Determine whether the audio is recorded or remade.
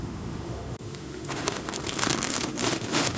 remade